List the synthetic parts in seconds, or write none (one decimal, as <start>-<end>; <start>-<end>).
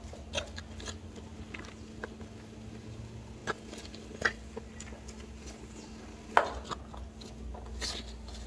none